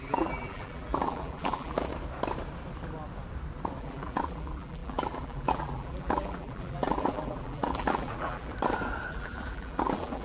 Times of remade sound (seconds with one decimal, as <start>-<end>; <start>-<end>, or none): 0.0-1.9; 3.8-8.5; 9.1-10.2